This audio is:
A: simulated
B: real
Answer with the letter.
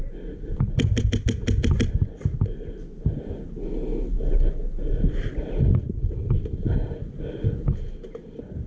B